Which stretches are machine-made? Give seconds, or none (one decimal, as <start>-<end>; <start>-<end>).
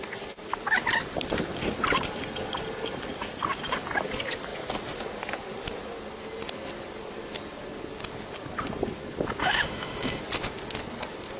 9.4-10.2